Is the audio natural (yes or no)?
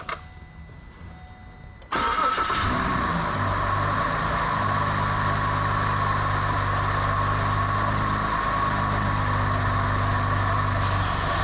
yes